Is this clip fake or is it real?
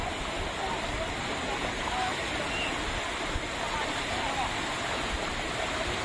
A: real